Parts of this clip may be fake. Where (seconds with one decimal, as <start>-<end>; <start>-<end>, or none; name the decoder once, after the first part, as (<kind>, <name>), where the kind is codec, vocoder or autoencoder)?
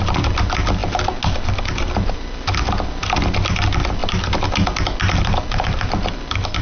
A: none